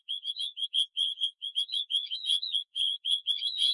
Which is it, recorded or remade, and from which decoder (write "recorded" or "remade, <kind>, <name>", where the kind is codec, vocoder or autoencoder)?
remade, vocoder, Vocos